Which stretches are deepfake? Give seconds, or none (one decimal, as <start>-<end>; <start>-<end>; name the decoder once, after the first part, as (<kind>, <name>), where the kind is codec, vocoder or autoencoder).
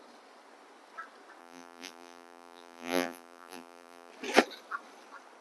1.4-4.1 (vocoder, BigVGAN v2)